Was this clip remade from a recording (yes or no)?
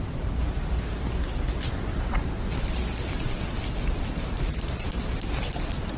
no